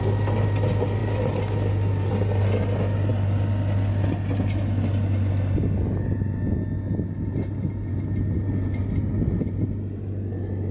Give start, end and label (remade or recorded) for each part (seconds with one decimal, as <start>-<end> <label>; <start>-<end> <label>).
0.0-10.7 recorded